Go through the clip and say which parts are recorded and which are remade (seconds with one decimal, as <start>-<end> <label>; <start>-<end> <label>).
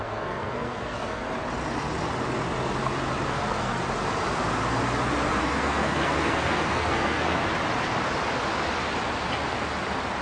0.0-1.2 remade; 1.2-3.3 recorded; 3.3-3.8 remade; 3.8-5.4 recorded; 5.4-7.4 remade; 7.4-10.2 recorded